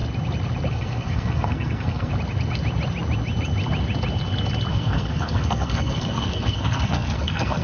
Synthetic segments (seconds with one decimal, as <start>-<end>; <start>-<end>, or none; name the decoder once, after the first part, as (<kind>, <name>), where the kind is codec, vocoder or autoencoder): 0.7-2.1 (codec, SNAC); 4.7-7.6